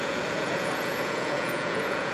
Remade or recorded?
remade